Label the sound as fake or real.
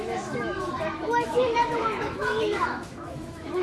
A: fake